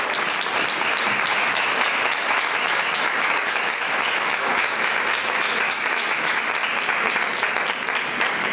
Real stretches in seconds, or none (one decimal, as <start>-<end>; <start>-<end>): 0.0-1.3; 6.4-8.5